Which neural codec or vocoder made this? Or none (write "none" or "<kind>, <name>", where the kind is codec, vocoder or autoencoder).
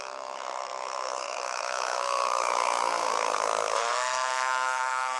codec, SNAC